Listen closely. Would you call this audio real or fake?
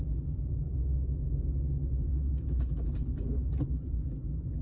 real